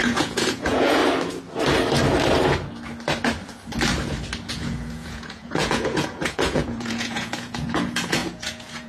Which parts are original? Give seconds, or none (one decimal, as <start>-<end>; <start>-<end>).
1.0-4.5

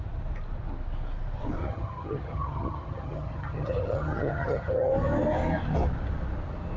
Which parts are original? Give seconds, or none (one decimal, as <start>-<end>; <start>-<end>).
0.0-1.6; 4.9-6.8

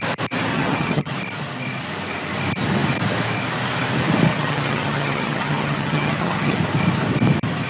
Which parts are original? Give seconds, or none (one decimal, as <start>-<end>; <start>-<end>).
0.0-0.5; 1.1-4.3; 6.6-7.7

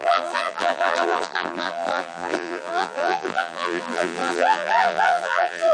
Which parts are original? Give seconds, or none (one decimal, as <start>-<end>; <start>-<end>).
none

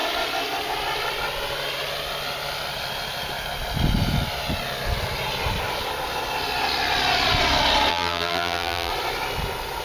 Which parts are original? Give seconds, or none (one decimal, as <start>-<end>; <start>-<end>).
0.0-7.9; 8.9-9.8

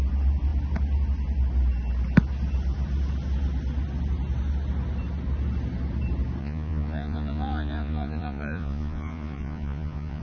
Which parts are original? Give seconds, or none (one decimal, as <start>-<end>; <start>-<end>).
0.0-6.4